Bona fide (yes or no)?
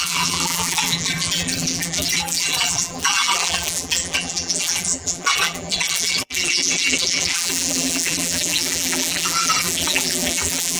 no